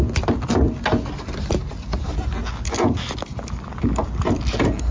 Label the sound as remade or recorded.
recorded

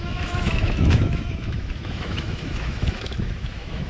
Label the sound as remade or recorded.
remade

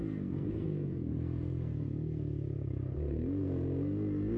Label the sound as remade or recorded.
remade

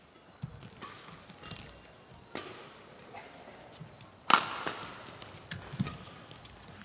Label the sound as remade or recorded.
recorded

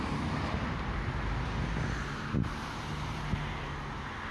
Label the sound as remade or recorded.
recorded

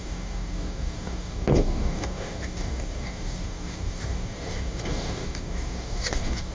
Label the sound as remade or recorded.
remade